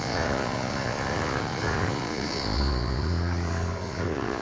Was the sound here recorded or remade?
remade